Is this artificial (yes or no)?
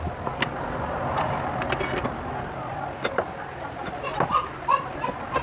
no